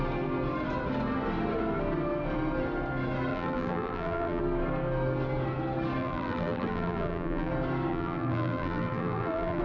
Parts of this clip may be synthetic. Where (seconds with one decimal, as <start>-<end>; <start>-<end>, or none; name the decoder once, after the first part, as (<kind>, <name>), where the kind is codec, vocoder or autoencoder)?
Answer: 3.3-4.4 (vocoder, BigVGAN v2); 6.0-7.5; 7.9-9.6